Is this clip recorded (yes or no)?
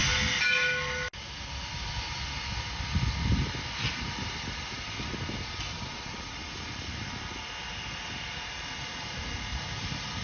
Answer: yes